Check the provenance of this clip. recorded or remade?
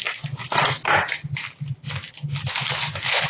recorded